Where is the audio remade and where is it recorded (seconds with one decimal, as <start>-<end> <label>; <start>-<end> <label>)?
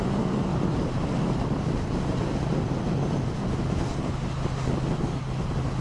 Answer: 0.0-0.5 recorded; 0.5-2.0 remade; 2.0-5.8 recorded